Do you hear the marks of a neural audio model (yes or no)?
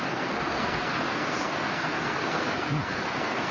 yes